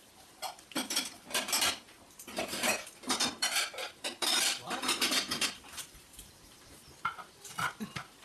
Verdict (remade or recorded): remade